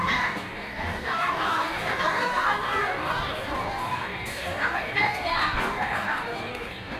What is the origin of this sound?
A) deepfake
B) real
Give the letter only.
A